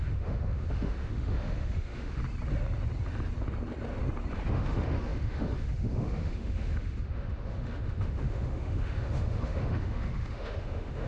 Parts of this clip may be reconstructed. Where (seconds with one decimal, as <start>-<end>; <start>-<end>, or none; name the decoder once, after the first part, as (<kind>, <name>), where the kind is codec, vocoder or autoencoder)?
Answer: 0.0-2.2 (autoencoder, DAC-VAE); 4.5-11.1